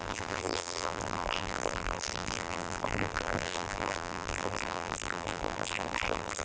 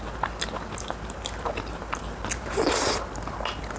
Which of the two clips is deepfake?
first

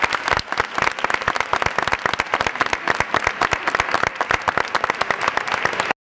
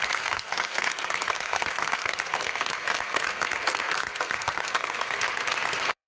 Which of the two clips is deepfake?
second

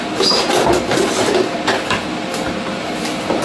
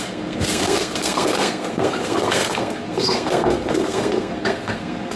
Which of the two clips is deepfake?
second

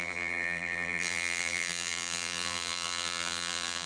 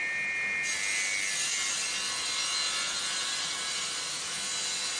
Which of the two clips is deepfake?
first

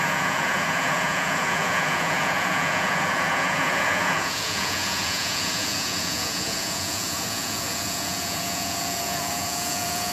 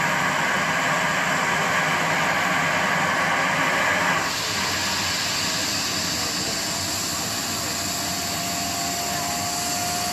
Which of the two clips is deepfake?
first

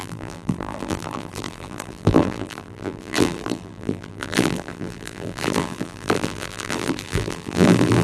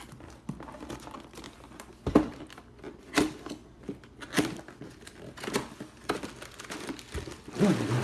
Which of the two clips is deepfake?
first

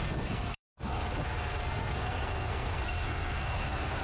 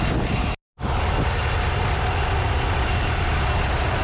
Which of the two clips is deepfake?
first